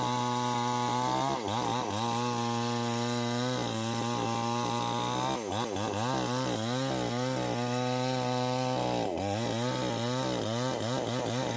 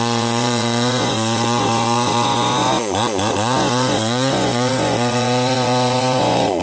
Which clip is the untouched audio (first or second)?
first